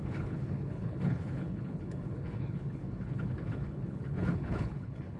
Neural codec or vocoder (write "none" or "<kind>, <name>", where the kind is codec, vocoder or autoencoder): codec, HILCodec